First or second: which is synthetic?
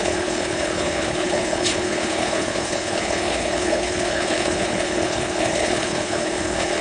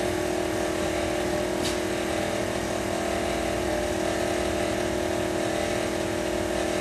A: first